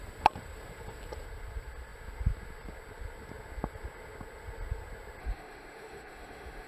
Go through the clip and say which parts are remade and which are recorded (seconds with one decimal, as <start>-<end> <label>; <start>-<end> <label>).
0.0-5.2 recorded; 5.2-6.7 remade